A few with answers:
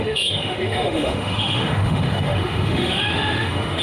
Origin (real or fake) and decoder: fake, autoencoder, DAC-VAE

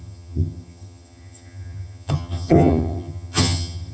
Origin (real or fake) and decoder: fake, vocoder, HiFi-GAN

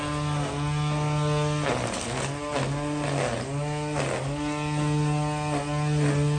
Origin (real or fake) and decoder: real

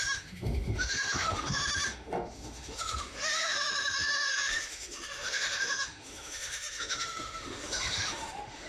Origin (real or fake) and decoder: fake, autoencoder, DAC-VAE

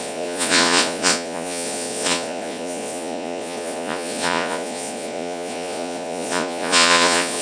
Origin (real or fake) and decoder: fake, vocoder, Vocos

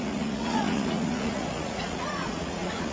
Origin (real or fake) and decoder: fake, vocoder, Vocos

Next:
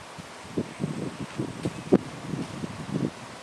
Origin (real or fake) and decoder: real